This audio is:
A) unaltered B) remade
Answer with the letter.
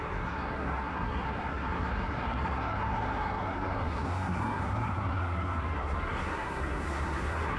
B